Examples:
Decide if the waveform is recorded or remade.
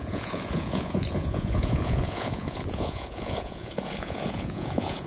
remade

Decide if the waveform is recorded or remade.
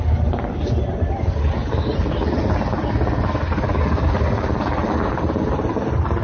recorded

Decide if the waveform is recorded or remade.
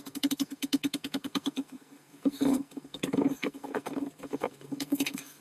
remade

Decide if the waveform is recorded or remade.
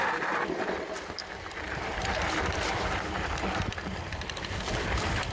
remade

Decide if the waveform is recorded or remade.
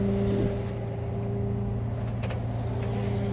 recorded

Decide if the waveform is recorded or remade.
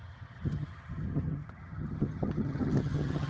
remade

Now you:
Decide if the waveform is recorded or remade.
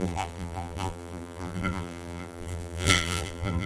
remade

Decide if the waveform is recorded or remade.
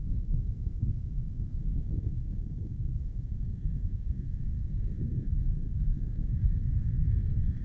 remade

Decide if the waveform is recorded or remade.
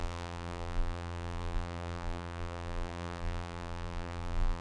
remade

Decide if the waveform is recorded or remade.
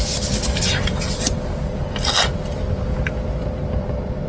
recorded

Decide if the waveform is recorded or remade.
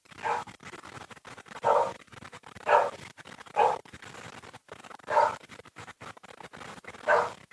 remade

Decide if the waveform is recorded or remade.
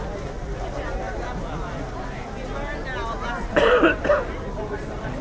recorded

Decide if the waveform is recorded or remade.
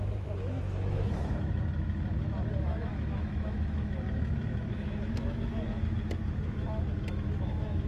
remade